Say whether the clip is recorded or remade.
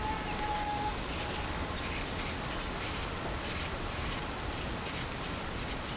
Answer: recorded